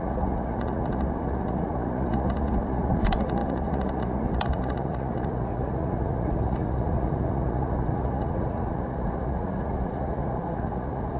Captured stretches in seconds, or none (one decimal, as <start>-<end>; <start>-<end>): none